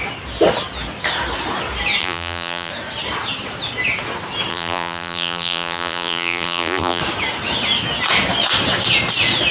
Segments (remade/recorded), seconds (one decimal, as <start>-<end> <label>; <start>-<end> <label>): 0.0-2.0 recorded; 2.0-2.7 remade; 2.7-4.5 recorded; 4.5-7.0 remade; 7.0-9.5 recorded